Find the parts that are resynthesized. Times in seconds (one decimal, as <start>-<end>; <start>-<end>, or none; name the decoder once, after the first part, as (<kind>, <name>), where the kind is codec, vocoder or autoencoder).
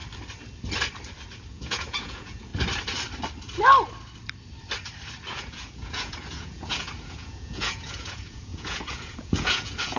1.5-2.5 (vocoder, Vocos); 5.3-10.0